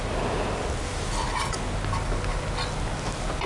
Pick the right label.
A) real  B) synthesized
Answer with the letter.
A